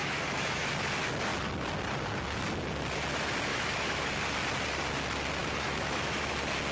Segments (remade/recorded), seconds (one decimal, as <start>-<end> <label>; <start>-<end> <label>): 0.0-0.7 remade; 0.7-3.5 recorded; 3.5-4.2 remade; 4.2-5.4 recorded; 5.4-6.3 remade; 6.3-6.7 recorded